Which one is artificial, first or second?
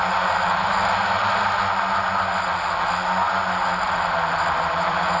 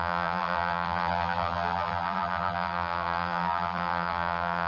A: second